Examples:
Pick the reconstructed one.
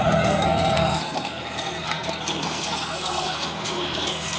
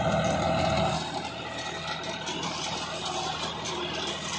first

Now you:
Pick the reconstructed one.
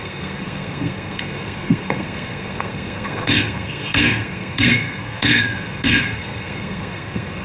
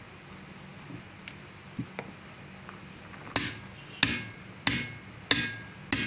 first